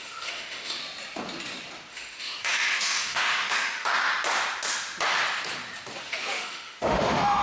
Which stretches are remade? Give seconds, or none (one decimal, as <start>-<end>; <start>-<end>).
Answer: 0.0-0.8; 1.9-3.9; 6.0-7.4